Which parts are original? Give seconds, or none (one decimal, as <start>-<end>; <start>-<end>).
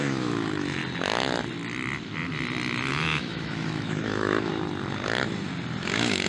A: 0.8-2.9; 4.5-5.8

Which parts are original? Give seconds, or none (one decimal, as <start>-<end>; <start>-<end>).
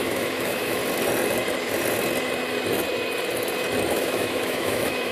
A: 0.8-3.9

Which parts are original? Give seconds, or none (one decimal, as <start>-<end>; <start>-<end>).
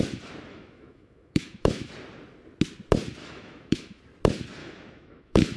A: 0.0-0.5; 1.9-3.2; 4.0-4.6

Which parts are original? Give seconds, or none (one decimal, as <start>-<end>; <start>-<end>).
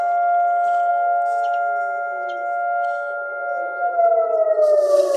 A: 0.0-0.9; 4.0-5.2